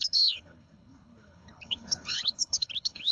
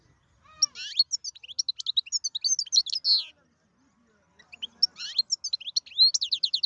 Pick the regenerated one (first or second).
first